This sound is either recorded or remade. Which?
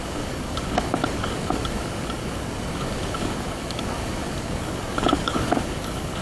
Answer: remade